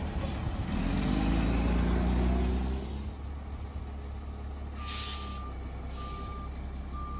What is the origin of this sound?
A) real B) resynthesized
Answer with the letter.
A